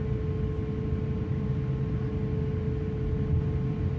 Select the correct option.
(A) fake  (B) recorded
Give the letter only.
B